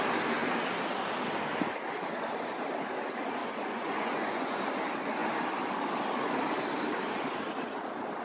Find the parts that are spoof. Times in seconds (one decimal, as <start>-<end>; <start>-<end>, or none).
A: 3.4-4.6